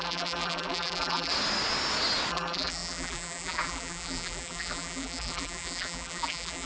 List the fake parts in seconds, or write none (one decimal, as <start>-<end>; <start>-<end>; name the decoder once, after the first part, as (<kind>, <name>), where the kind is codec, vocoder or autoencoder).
0.0-1.3 (vocoder, BigVGAN v2); 2.3-6.7